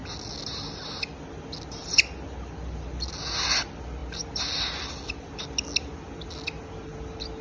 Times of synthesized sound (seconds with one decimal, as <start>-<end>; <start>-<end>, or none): none